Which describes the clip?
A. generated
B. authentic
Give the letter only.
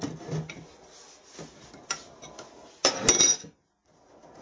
B